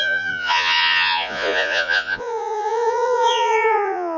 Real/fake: fake